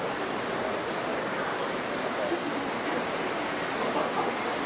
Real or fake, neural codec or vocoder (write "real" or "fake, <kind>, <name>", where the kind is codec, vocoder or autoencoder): real